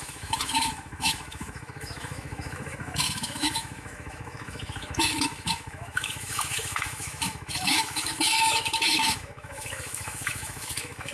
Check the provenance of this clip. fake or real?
fake